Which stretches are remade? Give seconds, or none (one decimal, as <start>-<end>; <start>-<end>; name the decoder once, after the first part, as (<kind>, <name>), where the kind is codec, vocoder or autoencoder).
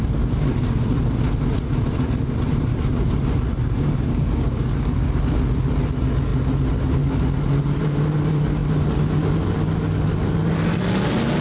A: 4.1-5.2 (codec, DAC)